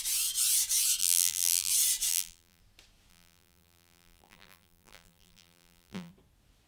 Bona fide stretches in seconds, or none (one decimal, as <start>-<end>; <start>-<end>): 0.0-1.0; 1.7-2.1; 2.6-3.1; 6.1-6.7